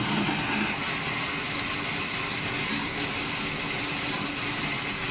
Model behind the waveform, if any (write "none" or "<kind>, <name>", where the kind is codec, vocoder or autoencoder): none